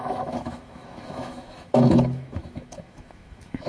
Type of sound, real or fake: fake